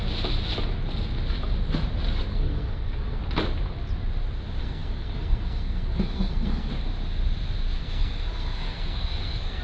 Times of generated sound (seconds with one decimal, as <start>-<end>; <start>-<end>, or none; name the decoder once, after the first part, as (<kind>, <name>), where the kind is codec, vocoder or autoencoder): 2.3-3.2 (codec, SNAC); 4.6-6.7; 7.8-9.6